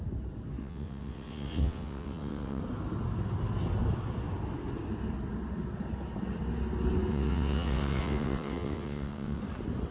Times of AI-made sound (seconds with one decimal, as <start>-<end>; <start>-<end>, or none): 0.6-2.6; 7.1-9.4